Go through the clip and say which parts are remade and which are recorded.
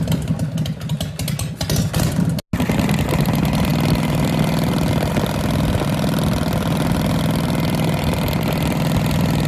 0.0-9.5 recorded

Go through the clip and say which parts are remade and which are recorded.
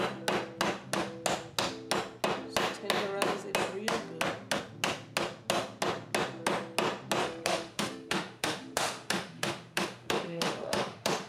0.0-7.2 recorded; 7.2-11.3 remade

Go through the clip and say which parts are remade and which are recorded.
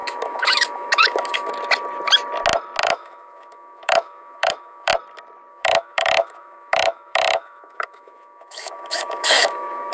0.0-1.5 remade; 1.5-2.8 recorded; 2.8-4.9 remade; 4.9-5.5 recorded; 5.5-9.9 remade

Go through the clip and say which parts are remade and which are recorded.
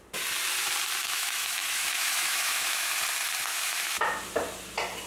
0.0-1.0 recorded; 1.0-2.9 remade; 2.9-3.5 recorded; 3.5-4.2 remade; 4.2-5.1 recorded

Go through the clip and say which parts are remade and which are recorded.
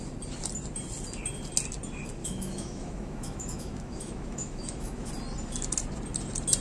0.0-2.2 recorded; 2.2-5.1 remade; 5.1-6.6 recorded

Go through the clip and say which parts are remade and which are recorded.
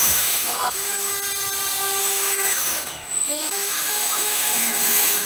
0.0-1.1 remade; 1.1-2.0 recorded; 2.0-5.3 remade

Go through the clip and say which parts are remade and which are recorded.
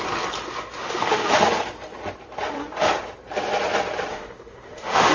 0.0-0.8 recorded; 0.8-1.4 remade; 1.4-4.1 recorded; 4.1-5.1 remade